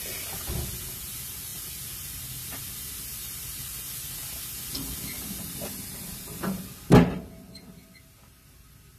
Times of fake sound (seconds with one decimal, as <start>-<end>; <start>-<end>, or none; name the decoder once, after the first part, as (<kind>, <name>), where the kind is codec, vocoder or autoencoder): 1.5-2.6 (vocoder, BigVGAN v2)